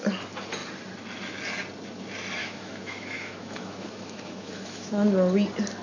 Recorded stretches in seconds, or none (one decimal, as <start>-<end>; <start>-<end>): 0.0-2.4; 4.9-5.8